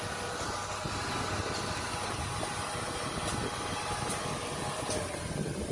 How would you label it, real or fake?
real